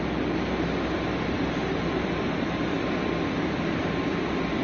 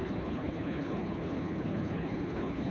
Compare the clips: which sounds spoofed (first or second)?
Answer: second